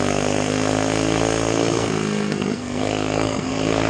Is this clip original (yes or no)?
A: no